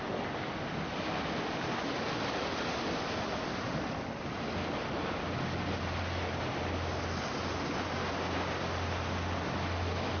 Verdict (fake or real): real